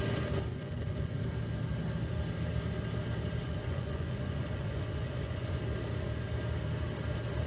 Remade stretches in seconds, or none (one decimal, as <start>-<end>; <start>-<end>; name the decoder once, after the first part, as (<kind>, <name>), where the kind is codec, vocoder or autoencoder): 0.5-1.2 (vocoder, Vocos); 3.4-5.6